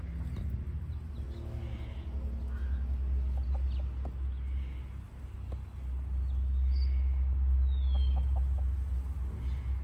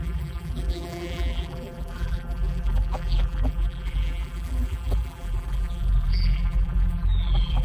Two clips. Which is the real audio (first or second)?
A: first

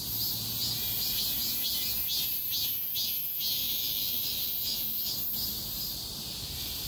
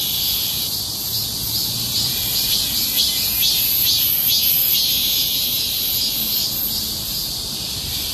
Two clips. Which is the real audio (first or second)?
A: first